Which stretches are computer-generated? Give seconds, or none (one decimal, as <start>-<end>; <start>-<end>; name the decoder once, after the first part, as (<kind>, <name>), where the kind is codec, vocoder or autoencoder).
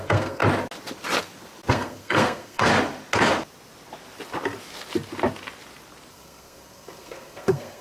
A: 0.0-0.4 (codec, SNAC); 1.7-2.7; 6.1-7.8